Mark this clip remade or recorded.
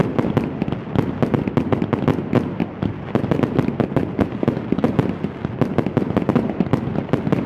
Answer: recorded